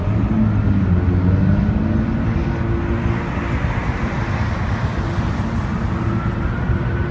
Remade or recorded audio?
recorded